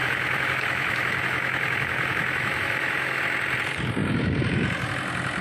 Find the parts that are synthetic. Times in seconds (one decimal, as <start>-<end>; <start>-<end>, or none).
0.0-3.2